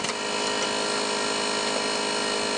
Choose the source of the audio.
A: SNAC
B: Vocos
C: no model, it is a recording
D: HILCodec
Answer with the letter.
C